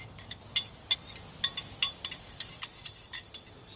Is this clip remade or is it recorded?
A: recorded